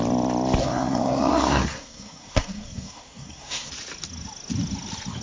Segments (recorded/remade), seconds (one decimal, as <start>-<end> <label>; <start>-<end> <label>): 0.0-0.6 recorded; 0.6-3.7 remade; 3.7-5.2 recorded